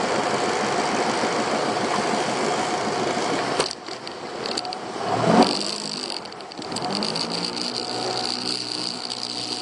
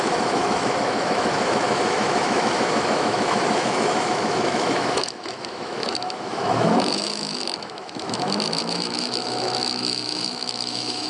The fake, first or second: second